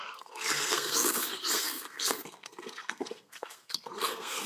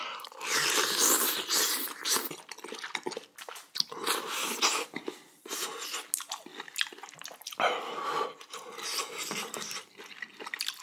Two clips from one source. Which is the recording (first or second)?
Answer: second